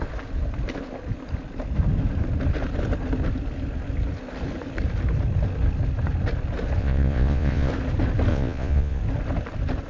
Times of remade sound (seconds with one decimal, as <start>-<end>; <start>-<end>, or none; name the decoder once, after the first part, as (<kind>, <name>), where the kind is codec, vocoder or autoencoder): 6.8-7.7 (vocoder, Vocos); 8.3-9.0